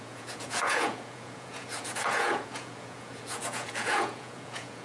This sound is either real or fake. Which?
fake